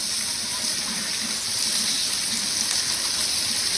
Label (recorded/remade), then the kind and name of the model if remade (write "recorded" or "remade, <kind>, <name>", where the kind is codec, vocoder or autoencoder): recorded